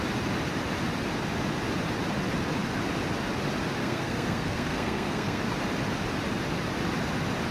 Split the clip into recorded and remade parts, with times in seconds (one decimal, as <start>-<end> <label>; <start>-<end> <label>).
0.0-3.8 recorded; 3.8-5.4 remade; 5.4-7.5 recorded